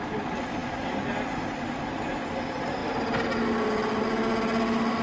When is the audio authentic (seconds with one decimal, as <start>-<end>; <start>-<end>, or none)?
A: 0.0-5.0

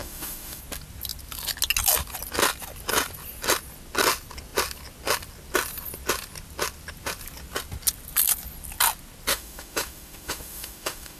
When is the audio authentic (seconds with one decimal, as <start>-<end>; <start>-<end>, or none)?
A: 0.6-9.3

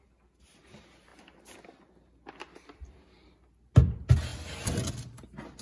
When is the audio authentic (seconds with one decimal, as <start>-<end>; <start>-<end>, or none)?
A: 0.0-5.6

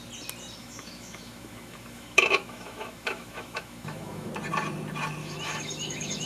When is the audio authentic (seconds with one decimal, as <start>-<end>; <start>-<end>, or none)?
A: 0.0-0.6; 4.3-5.2

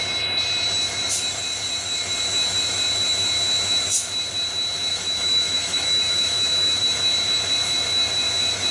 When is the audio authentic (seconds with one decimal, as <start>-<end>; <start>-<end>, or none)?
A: 0.0-4.9; 6.8-8.7

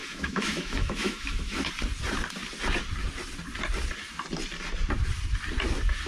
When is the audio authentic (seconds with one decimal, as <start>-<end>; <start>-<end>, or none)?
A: 1.7-6.1

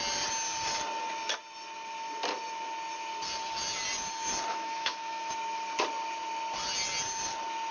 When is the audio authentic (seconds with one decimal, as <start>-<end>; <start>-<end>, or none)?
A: 0.0-4.5; 5.3-7.7

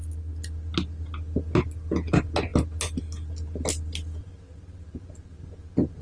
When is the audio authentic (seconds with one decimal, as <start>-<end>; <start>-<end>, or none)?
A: 0.0-6.0